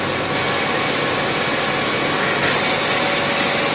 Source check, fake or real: real